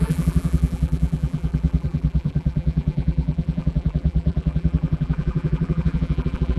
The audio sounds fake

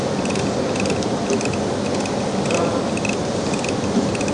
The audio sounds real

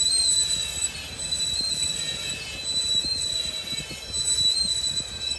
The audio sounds real